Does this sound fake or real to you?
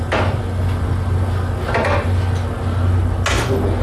real